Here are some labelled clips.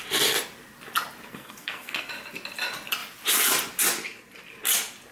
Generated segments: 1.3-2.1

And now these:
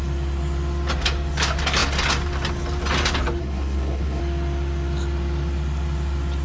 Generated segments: 3.4-4.2

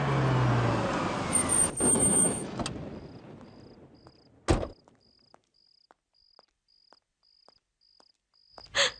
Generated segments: 1.9-2.6

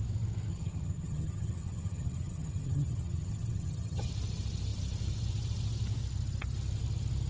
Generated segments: 0.5-4.1